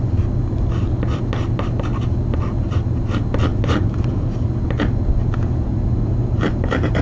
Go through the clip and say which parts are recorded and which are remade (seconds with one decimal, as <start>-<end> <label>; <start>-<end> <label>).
0.0-3.5 recorded; 3.5-4.5 remade; 4.5-5.2 recorded; 5.2-7.0 remade